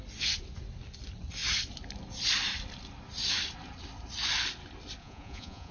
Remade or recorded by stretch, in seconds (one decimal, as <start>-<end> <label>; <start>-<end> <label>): 0.0-5.0 recorded; 5.0-5.7 remade